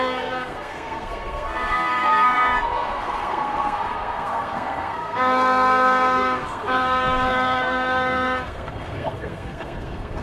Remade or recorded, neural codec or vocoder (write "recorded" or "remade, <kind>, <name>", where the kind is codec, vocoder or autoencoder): remade, codec, SNAC